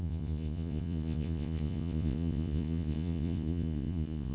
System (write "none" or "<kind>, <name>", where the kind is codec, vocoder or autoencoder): vocoder, Vocos